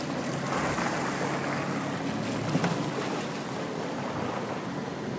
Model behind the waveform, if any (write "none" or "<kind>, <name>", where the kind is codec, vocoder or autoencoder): none